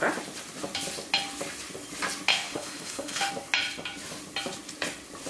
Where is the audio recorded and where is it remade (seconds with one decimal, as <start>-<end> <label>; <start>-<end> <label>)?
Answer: 0.0-2.3 recorded; 2.3-3.3 remade; 3.3-5.3 recorded